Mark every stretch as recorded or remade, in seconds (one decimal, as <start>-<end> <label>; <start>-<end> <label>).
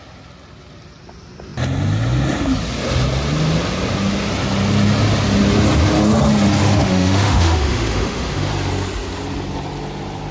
0.0-6.6 recorded; 6.6-8.5 remade; 8.5-10.3 recorded